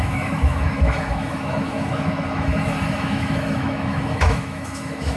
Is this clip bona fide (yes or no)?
no